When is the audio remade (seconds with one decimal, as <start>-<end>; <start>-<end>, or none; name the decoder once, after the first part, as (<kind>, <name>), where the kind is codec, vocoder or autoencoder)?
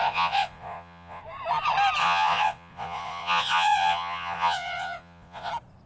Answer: 0.0-1.2 (vocoder, Vocos); 2.0-5.5